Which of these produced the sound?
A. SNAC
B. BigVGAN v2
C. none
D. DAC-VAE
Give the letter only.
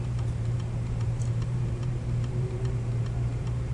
B